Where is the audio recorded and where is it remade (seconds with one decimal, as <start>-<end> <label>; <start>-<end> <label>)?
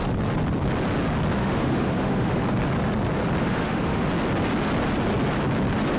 0.0-1.4 recorded; 1.4-2.4 remade; 2.4-3.4 recorded; 3.4-4.1 remade; 4.1-6.0 recorded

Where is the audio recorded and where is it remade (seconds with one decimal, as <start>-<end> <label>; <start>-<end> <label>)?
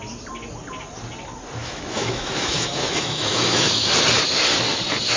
0.0-1.6 recorded; 1.6-3.9 remade; 3.9-5.2 recorded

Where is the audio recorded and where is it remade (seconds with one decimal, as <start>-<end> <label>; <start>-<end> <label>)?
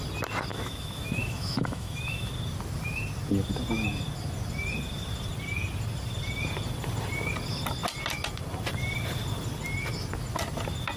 0.0-0.5 recorded; 0.5-2.3 remade; 2.3-11.0 recorded